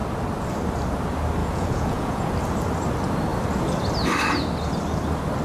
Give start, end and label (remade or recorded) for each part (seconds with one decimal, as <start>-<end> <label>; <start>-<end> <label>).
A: 0.0-1.4 recorded; 1.4-2.3 remade; 2.3-5.4 recorded